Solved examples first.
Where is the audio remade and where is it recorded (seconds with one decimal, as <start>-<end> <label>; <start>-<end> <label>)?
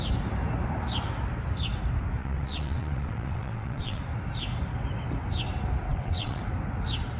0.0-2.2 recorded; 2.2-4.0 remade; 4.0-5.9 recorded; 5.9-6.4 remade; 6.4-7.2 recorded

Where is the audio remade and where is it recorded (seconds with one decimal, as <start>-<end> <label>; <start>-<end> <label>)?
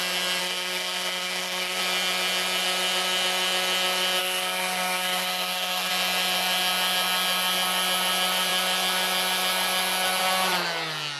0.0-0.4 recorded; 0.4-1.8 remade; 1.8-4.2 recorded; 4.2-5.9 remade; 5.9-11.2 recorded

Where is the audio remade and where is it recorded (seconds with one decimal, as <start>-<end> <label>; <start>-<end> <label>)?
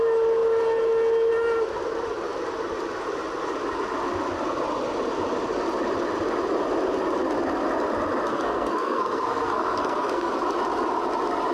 0.0-8.3 recorded; 8.3-10.3 remade; 10.3-11.5 recorded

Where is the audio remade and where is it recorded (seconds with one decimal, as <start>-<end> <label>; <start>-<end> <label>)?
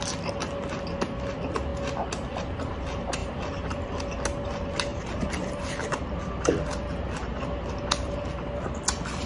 0.0-3.2 recorded; 3.2-4.0 remade; 4.0-4.9 recorded; 4.9-6.3 remade; 6.3-7.2 recorded; 7.2-8.3 remade; 8.3-9.3 recorded